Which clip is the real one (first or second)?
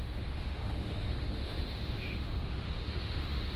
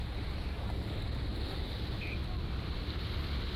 second